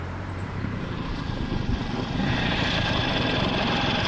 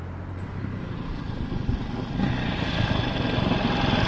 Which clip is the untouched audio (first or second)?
second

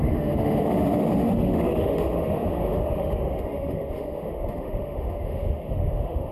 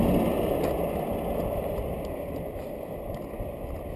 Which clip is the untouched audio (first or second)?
second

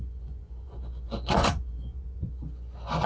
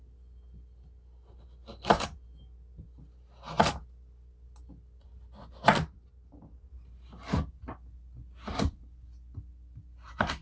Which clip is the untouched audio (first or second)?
second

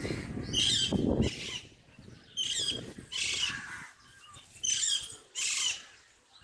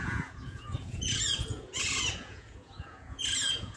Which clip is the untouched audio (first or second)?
first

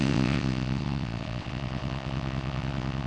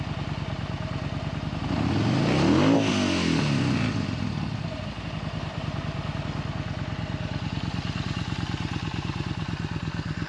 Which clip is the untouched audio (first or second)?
second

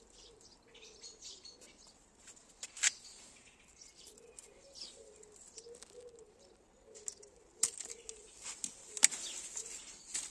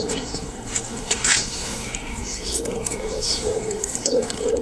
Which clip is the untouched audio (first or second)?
first